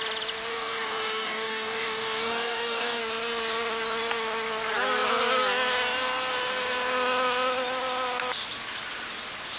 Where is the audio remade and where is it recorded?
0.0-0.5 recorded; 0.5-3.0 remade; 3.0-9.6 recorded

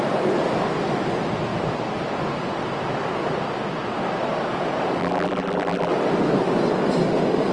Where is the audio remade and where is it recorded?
0.0-5.0 recorded; 5.0-5.9 remade; 5.9-7.5 recorded

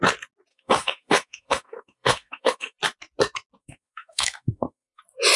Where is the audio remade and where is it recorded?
0.0-0.5 recorded; 0.5-2.8 remade; 2.8-3.6 recorded; 3.6-5.0 remade; 5.0-5.4 recorded

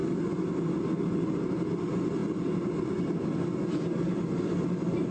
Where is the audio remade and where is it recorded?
0.0-5.1 recorded